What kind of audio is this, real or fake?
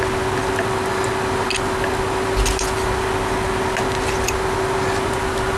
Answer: real